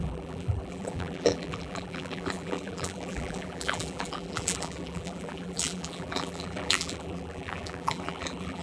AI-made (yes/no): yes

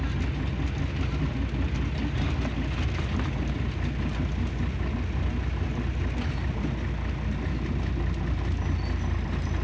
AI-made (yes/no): no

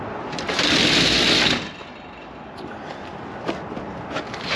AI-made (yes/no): no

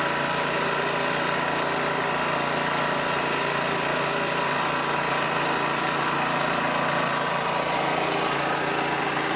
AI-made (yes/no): no